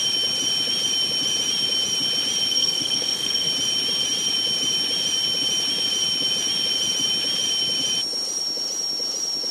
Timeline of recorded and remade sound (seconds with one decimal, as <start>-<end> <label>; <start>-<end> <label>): 0.0-2.5 recorded; 2.5-3.5 remade; 3.5-9.5 recorded